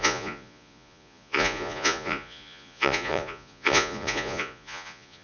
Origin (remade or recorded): remade